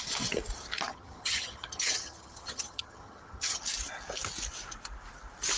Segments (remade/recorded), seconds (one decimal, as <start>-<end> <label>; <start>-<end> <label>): 0.0-0.9 recorded; 0.9-3.6 remade; 3.6-5.6 recorded